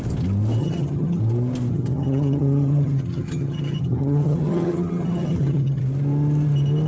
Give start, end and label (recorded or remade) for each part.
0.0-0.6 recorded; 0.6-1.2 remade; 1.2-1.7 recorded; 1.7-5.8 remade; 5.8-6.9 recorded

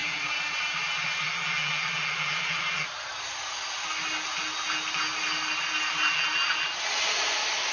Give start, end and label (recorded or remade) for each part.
0.0-1.2 remade; 1.2-7.7 recorded

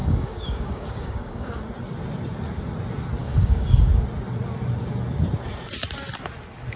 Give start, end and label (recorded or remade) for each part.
0.0-1.6 remade; 1.6-3.2 recorded; 3.2-3.9 remade; 3.9-6.8 recorded

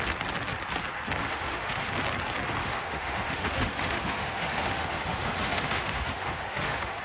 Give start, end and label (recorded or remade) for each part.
0.0-1.2 recorded; 1.2-1.9 remade; 1.9-2.6 recorded; 2.6-7.0 remade

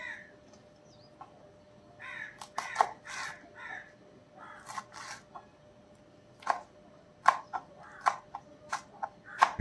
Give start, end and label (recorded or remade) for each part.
0.0-9.6 recorded

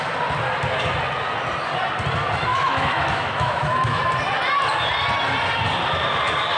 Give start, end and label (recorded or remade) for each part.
0.0-2.5 recorded; 2.5-4.0 remade; 4.0-6.6 recorded